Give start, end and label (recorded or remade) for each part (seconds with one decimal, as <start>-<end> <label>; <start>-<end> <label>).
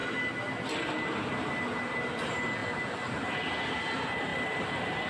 0.0-4.3 recorded; 4.3-5.1 remade